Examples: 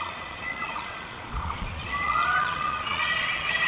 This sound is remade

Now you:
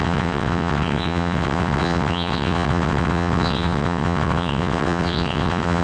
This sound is remade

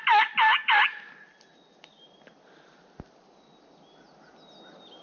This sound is recorded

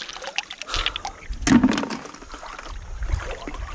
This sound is recorded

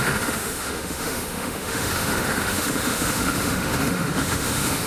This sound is remade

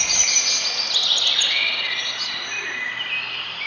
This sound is recorded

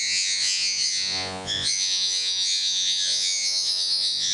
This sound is remade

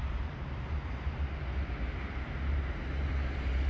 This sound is remade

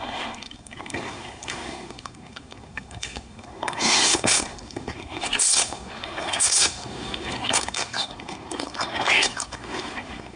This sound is remade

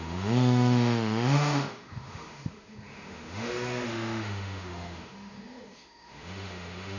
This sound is remade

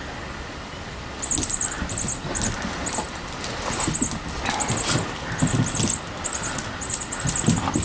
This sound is recorded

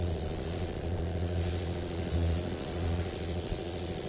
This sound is remade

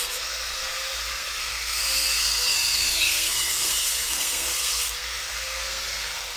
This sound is remade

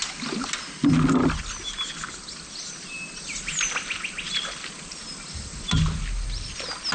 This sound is recorded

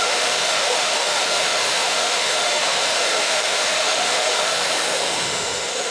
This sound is remade